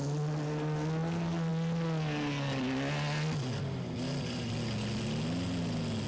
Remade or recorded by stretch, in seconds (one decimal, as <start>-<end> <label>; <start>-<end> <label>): 0.0-6.1 recorded